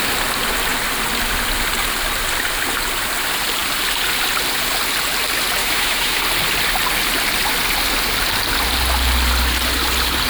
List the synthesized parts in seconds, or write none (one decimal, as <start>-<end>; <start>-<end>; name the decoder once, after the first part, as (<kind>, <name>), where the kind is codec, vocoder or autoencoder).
5.6-6.2 (autoencoder, DAC-VAE)